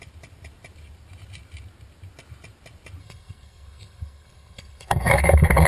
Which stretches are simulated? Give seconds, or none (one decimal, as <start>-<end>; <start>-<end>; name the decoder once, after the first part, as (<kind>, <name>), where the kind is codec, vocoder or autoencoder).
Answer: 3.0-5.7 (codec, SNAC)

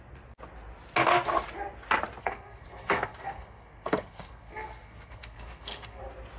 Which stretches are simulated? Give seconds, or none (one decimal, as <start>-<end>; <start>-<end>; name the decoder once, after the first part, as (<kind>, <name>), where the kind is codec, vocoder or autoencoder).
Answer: 2.2-6.0 (codec, SNAC)

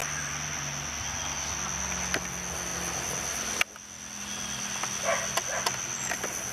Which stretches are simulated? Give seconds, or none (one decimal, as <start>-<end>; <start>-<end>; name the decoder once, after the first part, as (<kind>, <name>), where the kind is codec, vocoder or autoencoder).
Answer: none